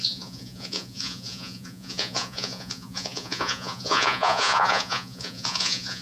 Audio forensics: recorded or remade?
remade